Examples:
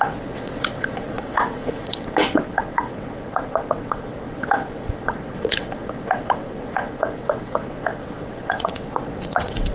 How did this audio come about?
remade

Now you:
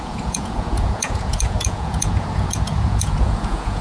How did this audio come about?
remade